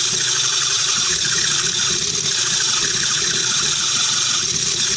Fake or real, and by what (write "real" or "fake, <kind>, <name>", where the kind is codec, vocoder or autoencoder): fake, vocoder, Vocos